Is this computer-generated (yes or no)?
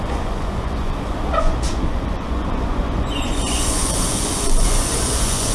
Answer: yes